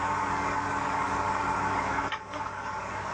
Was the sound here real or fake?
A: fake